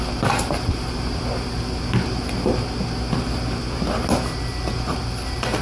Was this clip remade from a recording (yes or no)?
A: no